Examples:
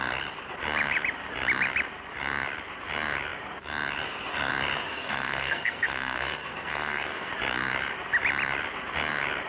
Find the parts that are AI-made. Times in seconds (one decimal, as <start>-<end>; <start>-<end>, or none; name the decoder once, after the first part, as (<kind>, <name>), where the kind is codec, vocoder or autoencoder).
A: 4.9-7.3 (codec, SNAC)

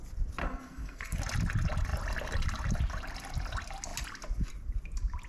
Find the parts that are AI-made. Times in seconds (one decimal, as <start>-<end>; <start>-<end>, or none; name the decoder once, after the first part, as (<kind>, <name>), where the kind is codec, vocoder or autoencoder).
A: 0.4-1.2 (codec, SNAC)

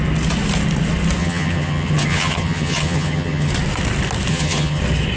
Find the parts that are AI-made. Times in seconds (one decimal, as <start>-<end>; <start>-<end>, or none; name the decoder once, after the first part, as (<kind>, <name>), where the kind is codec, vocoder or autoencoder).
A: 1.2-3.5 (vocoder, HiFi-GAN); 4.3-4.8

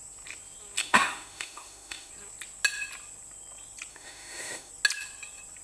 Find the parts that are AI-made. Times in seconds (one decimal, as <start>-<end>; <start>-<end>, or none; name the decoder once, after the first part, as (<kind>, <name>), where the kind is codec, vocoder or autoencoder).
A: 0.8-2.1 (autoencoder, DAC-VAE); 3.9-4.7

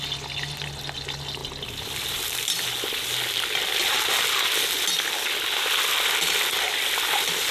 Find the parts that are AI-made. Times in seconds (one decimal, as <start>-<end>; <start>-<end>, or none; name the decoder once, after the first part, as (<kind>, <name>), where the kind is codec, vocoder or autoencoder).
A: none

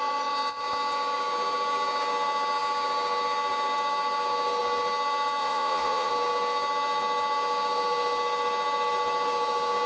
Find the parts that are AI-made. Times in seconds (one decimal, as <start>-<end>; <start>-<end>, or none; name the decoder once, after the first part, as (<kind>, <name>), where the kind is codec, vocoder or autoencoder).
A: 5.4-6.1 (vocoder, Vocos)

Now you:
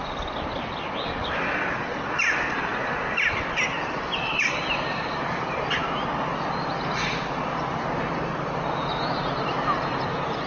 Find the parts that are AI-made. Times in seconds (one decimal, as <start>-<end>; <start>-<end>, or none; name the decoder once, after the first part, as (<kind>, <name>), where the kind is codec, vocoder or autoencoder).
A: 0.0-2.7 (vocoder, BigVGAN v2); 3.3-5.8